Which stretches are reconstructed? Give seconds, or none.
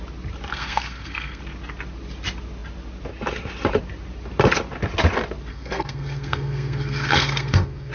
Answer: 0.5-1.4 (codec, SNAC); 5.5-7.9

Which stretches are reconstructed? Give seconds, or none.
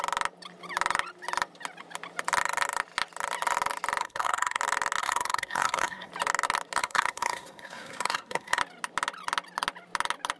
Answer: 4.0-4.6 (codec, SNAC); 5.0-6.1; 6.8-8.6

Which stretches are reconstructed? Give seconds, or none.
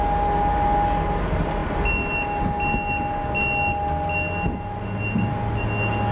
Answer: none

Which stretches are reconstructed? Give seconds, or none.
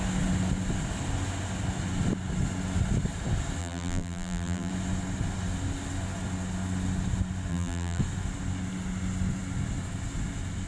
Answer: 3.6-4.7 (vocoder, BigVGAN v2); 7.5-8.0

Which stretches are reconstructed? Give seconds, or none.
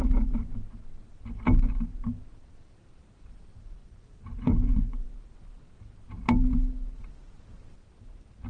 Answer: 3.8-5.1 (vocoder, Vocos)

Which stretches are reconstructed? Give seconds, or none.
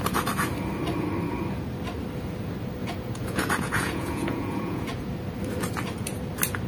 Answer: 2.8-5.1 (vocoder, Vocos)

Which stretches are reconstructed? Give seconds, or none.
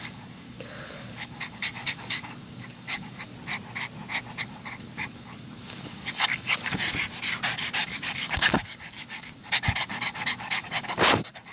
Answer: 0.0-3.3 (codec, DAC); 4.4-6.8; 7.8-11.5